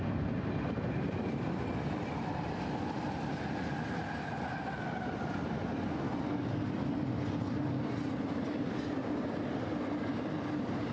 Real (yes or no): yes